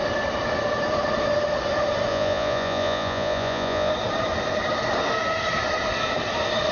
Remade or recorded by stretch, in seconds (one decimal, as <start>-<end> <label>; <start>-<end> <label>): 0.0-2.1 recorded; 2.1-3.9 remade; 3.9-6.7 recorded